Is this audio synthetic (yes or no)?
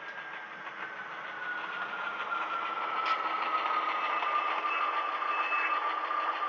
no